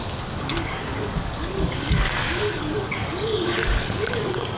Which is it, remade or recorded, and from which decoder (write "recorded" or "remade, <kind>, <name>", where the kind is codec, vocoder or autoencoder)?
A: remade, codec, DAC